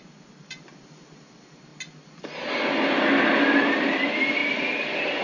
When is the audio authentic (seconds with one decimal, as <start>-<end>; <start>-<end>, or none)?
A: 0.0-4.4